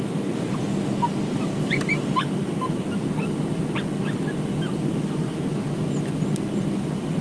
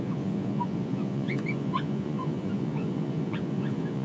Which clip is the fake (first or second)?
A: second